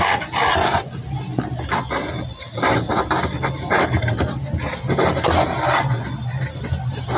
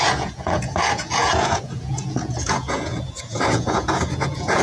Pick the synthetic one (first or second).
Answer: second